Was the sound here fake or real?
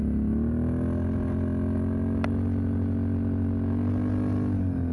real